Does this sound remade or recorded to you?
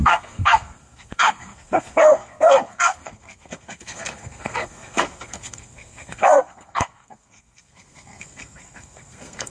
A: remade